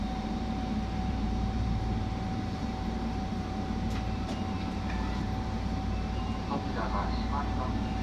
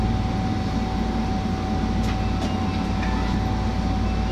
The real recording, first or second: second